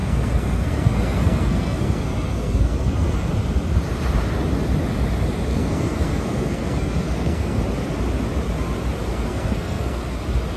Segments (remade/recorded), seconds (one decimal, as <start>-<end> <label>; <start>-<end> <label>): 0.0-3.3 remade; 3.3-5.5 recorded; 5.5-7.6 remade; 7.6-9.1 recorded; 9.1-10.0 remade; 10.0-10.6 recorded